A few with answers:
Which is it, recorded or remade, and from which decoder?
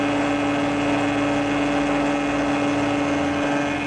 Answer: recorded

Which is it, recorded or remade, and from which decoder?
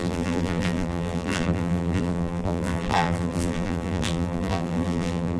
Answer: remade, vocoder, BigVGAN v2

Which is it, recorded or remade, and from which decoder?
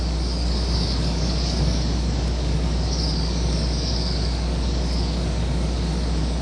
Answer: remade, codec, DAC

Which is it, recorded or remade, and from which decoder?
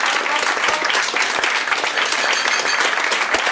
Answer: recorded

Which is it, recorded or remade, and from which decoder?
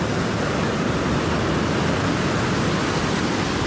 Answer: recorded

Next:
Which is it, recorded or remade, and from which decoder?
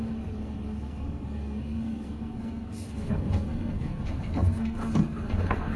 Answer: remade, codec, SNAC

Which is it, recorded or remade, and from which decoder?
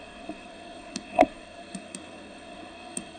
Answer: remade, codec, SNAC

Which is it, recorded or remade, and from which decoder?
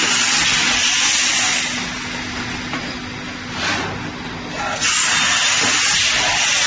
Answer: recorded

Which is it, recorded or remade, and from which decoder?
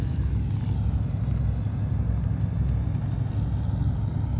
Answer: recorded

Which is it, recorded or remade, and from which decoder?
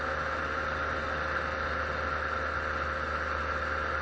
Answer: recorded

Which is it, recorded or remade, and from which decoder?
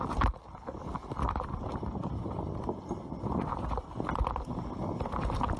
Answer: recorded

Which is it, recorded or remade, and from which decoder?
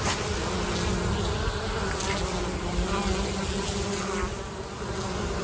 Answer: recorded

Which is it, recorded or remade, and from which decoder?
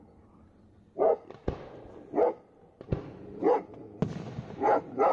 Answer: recorded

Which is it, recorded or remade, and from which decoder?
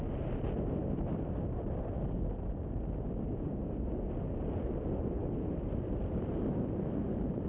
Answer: recorded